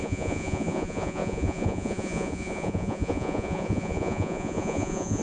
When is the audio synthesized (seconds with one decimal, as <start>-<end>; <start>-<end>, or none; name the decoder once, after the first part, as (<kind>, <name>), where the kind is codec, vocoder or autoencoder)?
0.0-5.2 (vocoder, Vocos)